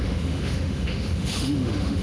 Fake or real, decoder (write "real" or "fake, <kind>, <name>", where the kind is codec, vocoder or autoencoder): fake, autoencoder, DAC-VAE